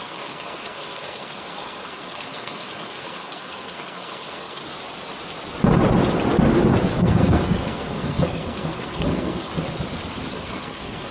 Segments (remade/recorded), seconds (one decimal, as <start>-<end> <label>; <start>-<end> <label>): 0.0-4.6 remade; 4.6-7.0 recorded; 7.0-9.5 remade; 9.5-10.3 recorded; 10.3-11.1 remade